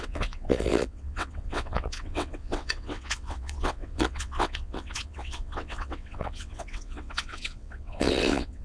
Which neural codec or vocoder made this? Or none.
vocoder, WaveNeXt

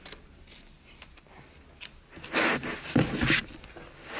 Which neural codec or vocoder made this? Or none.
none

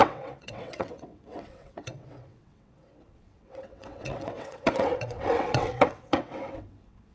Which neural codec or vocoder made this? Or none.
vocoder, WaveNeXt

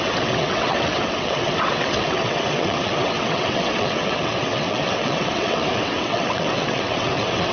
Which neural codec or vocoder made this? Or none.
vocoder, WaveNeXt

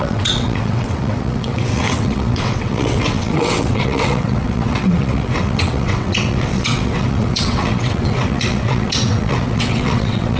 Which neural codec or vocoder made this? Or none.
vocoder, WaveNeXt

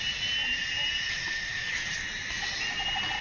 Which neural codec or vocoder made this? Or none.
none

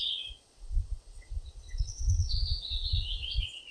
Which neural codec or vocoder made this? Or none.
vocoder, WaveNeXt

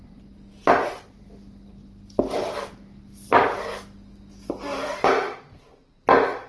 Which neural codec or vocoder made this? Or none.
none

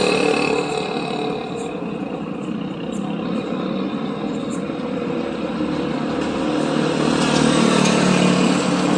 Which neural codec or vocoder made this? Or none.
none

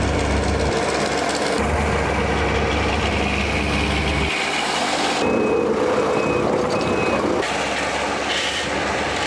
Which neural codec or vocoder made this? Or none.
none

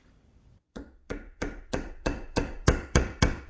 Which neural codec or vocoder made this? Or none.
vocoder, WaveNeXt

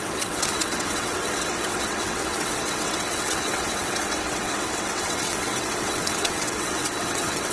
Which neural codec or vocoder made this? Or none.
vocoder, WaveNeXt